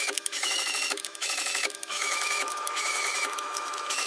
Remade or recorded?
remade